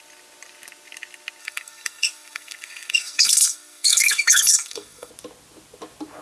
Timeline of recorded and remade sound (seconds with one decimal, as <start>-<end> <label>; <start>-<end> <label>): 0.0-1.4 recorded; 1.4-5.1 remade; 5.1-6.2 recorded